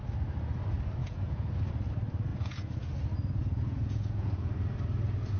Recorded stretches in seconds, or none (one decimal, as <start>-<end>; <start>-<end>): 0.0-1.0; 1.7-2.3; 3.0-3.4; 4.5-5.4